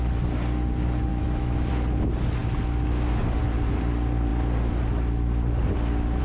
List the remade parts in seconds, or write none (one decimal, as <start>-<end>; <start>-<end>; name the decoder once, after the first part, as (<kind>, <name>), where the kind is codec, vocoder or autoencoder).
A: 1.1-1.7 (autoencoder, DAC-VAE)